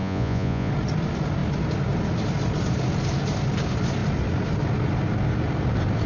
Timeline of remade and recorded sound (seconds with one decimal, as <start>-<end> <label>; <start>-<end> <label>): 0.0-0.7 remade; 0.7-6.1 recorded